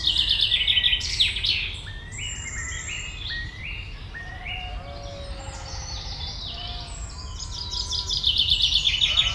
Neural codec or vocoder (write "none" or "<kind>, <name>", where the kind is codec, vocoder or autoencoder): none